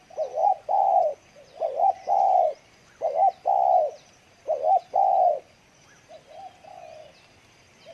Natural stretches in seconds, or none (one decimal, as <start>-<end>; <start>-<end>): 0.0-0.4; 3.1-5.0; 5.8-7.9